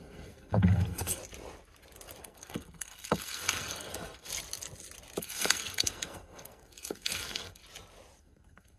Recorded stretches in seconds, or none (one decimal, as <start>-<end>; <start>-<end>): 1.2-2.2; 4.3-5.2; 7.6-8.2